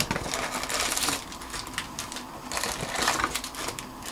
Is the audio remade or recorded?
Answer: recorded